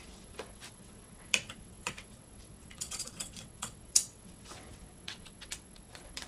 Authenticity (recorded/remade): remade